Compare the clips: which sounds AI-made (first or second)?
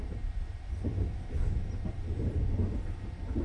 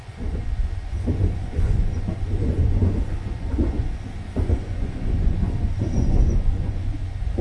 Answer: second